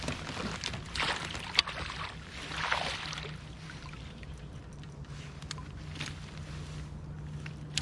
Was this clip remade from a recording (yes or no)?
no